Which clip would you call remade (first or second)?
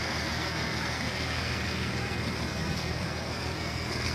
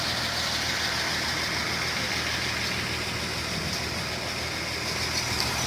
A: first